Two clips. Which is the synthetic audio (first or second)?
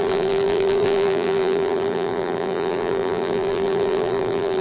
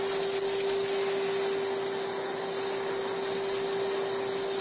first